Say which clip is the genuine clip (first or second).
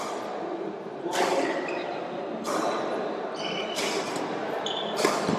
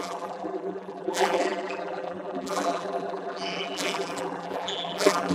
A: first